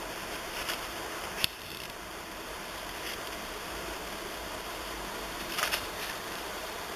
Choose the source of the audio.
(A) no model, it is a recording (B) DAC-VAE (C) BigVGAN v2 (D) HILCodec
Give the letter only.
C